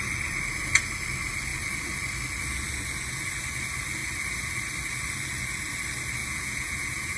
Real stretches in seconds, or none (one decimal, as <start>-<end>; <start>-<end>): 0.0-6.2